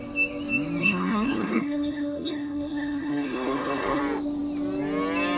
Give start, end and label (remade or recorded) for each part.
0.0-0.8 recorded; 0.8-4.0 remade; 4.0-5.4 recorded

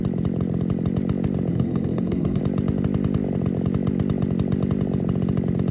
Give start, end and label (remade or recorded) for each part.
0.0-1.5 recorded; 1.5-2.4 remade; 2.4-5.7 recorded